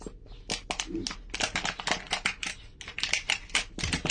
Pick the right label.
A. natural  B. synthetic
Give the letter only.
A